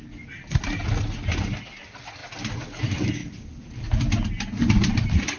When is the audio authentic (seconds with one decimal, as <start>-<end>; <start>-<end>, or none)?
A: 0.0-5.4